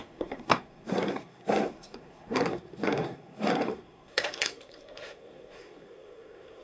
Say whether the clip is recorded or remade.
remade